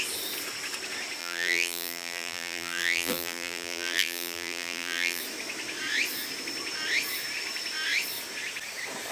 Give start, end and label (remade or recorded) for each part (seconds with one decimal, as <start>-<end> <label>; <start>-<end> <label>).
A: 0.0-1.2 recorded; 1.2-5.2 remade; 5.2-9.1 recorded